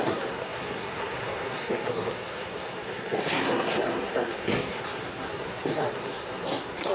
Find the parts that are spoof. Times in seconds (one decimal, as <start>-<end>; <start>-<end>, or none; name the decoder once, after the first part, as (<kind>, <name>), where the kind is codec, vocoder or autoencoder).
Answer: 0.0-6.9 (codec, SNAC)